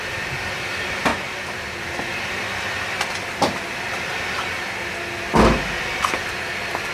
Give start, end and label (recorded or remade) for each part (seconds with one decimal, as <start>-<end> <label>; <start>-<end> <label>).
0.0-6.9 recorded